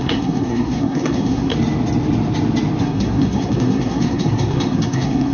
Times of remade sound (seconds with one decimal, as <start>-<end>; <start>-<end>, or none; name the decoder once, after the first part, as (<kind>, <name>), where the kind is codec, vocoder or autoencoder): 0.0-1.5 (codec, SNAC); 2.8-5.3